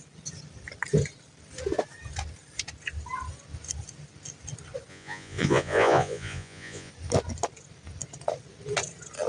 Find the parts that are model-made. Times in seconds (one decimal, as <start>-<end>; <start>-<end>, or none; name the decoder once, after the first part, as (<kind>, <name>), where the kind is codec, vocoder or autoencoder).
4.9-6.9 (vocoder, Vocos)